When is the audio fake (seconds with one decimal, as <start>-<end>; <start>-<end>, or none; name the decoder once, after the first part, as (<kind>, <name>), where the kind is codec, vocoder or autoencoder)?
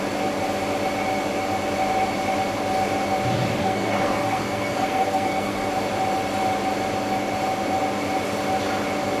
3.6-5.7 (codec, SNAC)